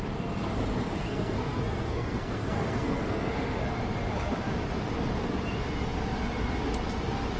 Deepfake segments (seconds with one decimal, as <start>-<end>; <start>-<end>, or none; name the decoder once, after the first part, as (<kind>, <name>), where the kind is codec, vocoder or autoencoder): 1.0-3.6 (codec, SNAC)